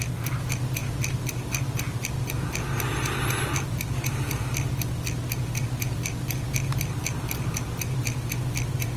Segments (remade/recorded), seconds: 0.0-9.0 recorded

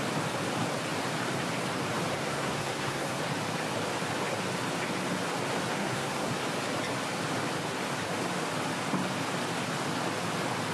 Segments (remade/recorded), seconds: 0.0-2.1 recorded; 2.1-3.2 remade; 3.2-5.7 recorded; 5.7-6.4 remade; 6.4-10.7 recorded

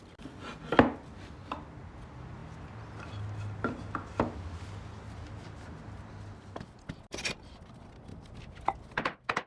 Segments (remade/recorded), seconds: 0.0-9.5 recorded